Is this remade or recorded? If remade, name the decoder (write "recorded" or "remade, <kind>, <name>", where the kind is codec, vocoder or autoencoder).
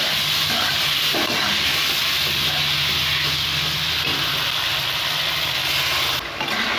recorded